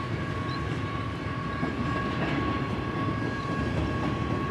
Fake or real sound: real